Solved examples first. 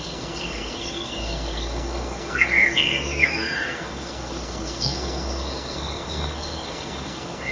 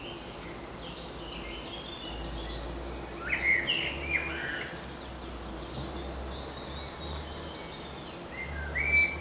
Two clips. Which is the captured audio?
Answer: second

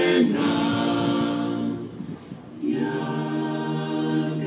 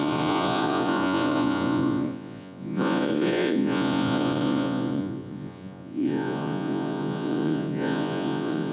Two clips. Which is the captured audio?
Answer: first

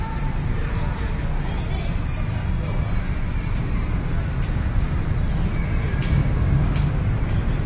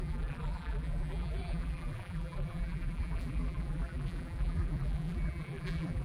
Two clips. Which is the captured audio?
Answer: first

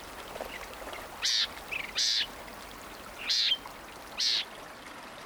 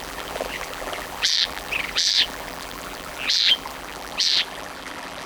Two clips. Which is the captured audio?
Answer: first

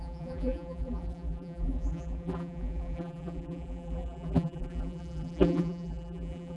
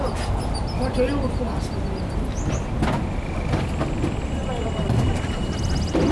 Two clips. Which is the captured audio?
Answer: second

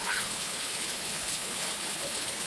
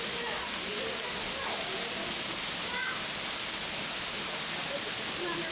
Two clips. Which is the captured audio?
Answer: second